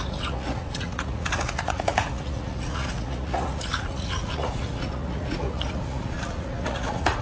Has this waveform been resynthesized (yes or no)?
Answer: yes